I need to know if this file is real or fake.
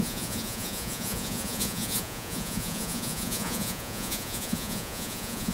fake